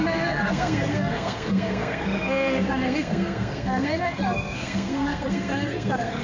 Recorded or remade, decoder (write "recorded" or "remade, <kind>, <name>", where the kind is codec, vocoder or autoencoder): remade, codec, SNAC